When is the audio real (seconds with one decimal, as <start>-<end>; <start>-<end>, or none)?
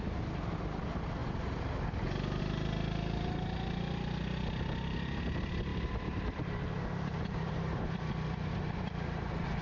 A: 0.0-5.7; 8.0-9.6